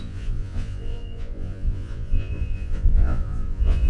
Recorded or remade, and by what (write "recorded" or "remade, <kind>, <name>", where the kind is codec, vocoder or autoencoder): remade, vocoder, Vocos